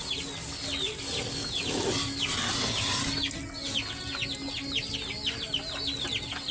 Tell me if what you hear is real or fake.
real